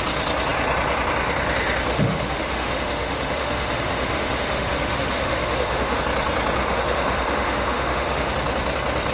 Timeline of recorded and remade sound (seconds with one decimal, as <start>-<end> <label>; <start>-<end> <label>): 0.0-1.9 recorded; 1.9-6.0 remade; 6.0-6.6 recorded; 6.6-8.3 remade; 8.3-9.1 recorded